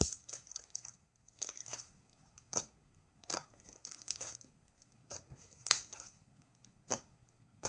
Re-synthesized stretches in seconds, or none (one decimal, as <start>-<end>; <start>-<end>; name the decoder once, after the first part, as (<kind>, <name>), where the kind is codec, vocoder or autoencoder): 0.0-7.7 (codec, SNAC)

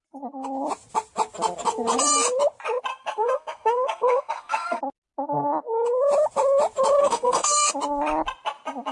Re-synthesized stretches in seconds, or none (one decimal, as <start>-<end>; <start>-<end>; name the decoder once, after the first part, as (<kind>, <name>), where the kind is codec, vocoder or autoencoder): 2.9-4.8 (codec, SNAC); 7.0-7.7